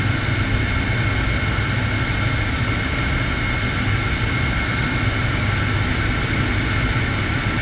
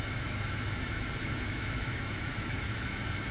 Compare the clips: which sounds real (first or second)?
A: first